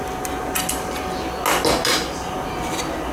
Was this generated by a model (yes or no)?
no